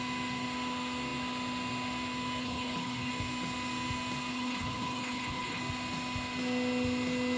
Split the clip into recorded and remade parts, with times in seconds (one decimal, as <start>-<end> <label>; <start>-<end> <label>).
0.0-2.4 recorded; 2.4-3.1 remade; 3.1-4.3 recorded; 4.3-5.6 remade; 5.6-7.4 recorded